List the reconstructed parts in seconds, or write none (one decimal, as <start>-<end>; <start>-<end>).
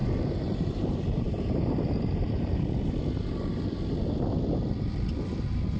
0.0-2.6